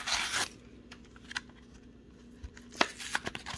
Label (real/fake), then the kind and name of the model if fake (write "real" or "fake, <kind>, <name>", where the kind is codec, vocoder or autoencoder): real